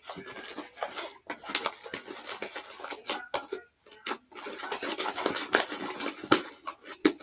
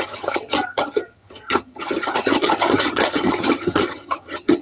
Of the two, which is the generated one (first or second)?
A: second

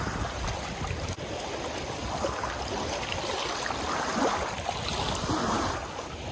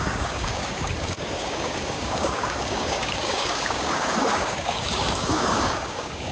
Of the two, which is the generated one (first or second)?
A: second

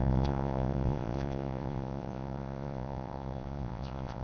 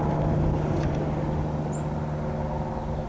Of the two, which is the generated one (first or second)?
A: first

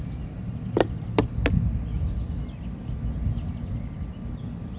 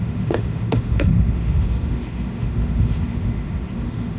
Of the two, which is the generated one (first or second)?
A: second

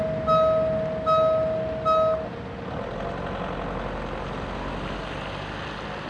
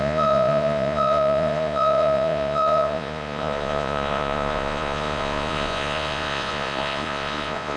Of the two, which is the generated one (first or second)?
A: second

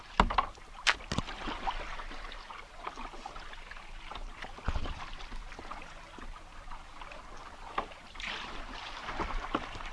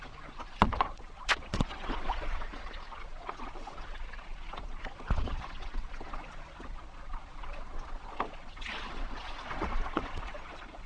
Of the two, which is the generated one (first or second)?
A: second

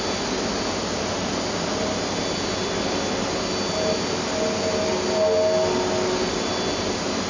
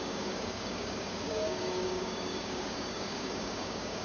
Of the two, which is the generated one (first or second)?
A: second